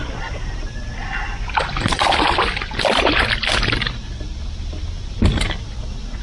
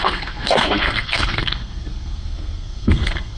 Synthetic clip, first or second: second